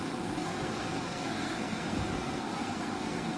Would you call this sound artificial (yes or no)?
yes